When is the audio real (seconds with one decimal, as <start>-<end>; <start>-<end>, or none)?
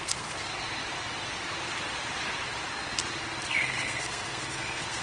0.5-3.5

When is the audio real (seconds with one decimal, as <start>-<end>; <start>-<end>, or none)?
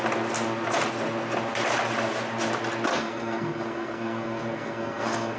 0.0-2.9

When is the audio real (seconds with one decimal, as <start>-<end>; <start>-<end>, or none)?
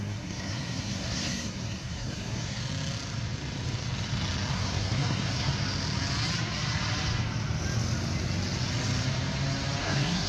2.6-4.5; 5.5-9.8